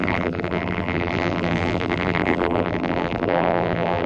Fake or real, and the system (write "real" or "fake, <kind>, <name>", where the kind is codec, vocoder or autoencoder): fake, vocoder, BigVGAN v2